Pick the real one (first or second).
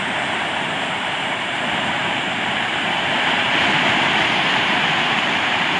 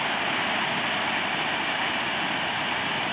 second